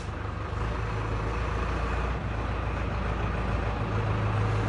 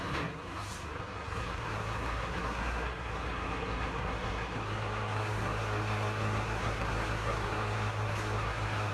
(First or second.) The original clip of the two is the first